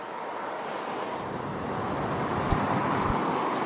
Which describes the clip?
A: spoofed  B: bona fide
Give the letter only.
B